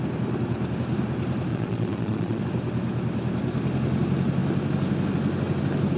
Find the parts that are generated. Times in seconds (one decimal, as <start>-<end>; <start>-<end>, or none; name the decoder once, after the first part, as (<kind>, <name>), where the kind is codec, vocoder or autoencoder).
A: 1.5-2.4 (vocoder, Vocos)

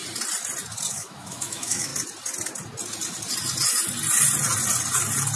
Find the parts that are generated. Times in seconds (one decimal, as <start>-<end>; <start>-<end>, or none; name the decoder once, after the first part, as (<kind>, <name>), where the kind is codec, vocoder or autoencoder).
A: 0.9-1.9 (autoencoder, DAC-VAE)

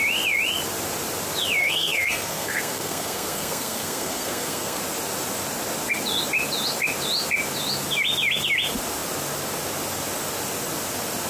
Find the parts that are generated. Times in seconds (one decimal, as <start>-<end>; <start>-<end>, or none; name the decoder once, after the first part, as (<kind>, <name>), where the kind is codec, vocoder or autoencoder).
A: 1.6-4.8 (codec, SNAC)

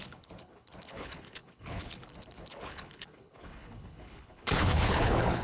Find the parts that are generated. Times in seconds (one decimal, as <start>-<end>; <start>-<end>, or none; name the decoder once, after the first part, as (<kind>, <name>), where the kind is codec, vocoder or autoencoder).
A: 0.0-5.4 (codec, HILCodec)